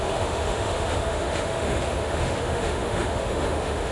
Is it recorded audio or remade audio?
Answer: remade